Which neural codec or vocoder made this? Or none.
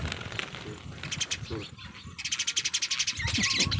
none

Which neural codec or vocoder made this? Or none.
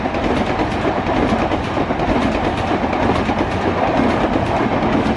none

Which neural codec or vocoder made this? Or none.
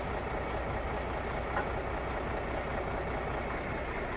none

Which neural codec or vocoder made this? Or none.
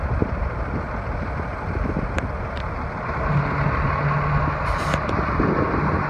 none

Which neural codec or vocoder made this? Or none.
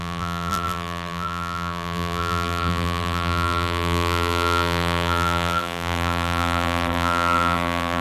vocoder, BigVGAN v2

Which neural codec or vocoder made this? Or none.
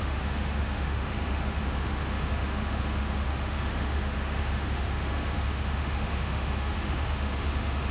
autoencoder, DAC-VAE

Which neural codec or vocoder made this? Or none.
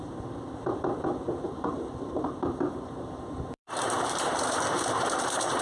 vocoder, BigVGAN v2